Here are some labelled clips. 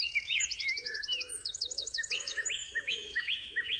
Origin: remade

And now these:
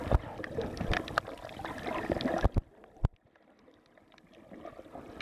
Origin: recorded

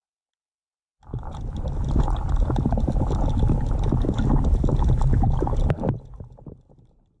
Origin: recorded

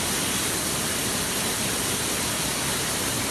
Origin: recorded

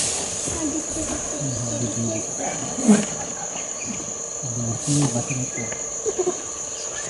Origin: recorded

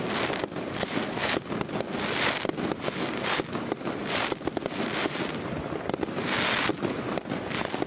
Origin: recorded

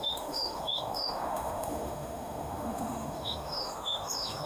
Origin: remade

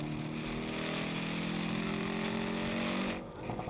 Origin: recorded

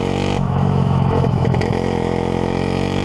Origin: remade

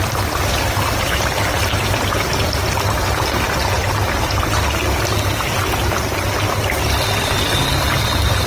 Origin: recorded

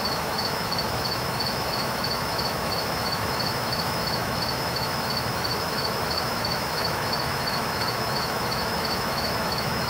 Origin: remade